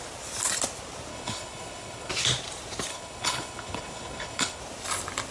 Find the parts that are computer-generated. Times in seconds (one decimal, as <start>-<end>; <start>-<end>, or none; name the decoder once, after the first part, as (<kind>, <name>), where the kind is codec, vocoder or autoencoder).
1.1-2.1 (codec, HILCodec); 2.9-4.6